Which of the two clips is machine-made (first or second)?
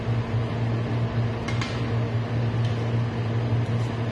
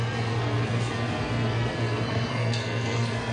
second